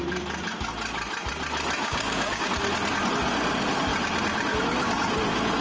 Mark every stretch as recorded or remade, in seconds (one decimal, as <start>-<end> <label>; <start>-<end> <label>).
0.0-1.8 recorded; 1.8-2.5 remade; 2.5-5.6 recorded